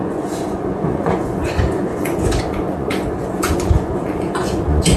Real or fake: fake